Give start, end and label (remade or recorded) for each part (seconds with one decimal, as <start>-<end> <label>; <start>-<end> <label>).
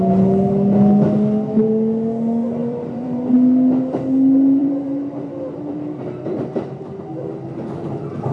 0.0-2.6 recorded; 2.6-3.3 remade; 3.3-4.6 recorded; 4.6-7.2 remade; 7.2-8.3 recorded